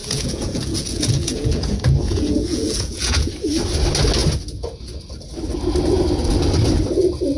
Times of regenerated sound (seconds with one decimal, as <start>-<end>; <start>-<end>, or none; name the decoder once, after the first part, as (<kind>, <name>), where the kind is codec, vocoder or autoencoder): 0.0-3.3 (vocoder, Vocos)